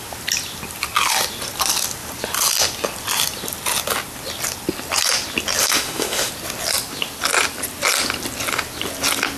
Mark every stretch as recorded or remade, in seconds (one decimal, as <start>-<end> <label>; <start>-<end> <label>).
0.0-5.6 recorded; 5.6-6.3 remade; 6.3-9.4 recorded